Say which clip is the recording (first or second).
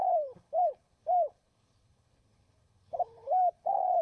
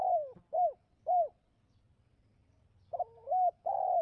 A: second